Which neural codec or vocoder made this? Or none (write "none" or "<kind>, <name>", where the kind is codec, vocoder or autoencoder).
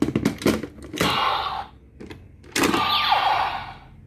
none